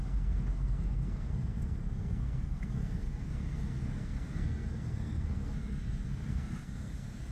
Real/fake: fake